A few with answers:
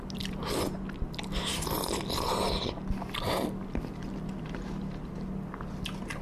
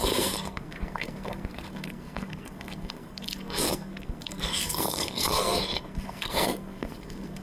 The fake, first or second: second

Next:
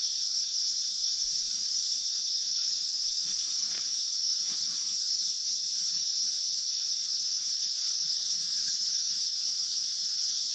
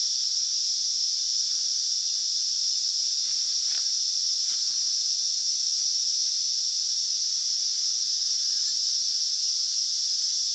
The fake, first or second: first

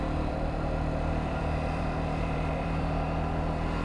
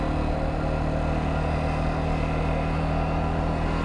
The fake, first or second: first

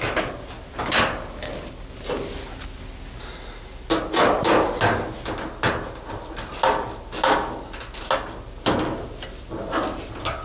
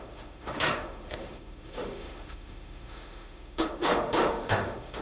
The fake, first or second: second